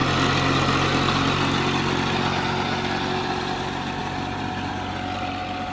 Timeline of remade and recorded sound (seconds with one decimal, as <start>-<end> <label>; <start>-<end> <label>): 0.0-4.0 recorded; 4.0-4.7 remade; 4.7-5.7 recorded